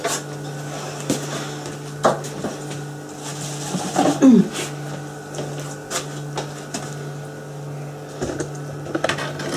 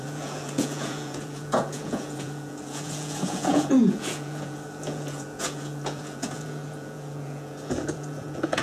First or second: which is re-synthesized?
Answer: second